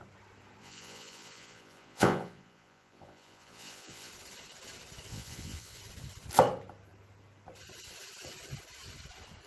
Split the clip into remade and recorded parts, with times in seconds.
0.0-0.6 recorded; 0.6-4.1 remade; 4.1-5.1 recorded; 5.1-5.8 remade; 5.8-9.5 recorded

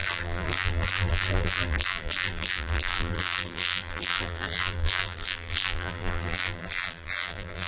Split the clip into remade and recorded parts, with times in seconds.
0.0-7.7 remade

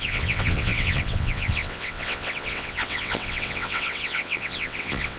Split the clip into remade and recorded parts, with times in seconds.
0.0-5.2 remade

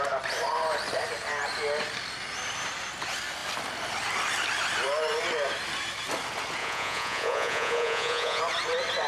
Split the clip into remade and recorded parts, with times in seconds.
0.0-6.6 recorded; 6.6-8.4 remade; 8.4-9.1 recorded